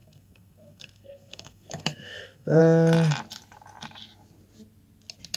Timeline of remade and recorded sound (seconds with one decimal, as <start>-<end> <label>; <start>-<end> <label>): 0.0-2.6 remade; 2.6-5.4 recorded